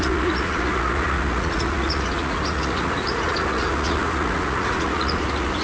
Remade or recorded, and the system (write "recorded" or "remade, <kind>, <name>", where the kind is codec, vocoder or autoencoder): remade, vocoder, Vocos